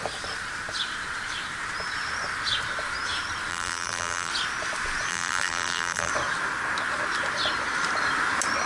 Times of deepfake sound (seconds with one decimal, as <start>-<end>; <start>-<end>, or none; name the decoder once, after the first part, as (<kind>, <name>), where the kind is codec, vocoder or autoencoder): 3.5-4.3 (vocoder, BigVGAN v2); 5.1-6.1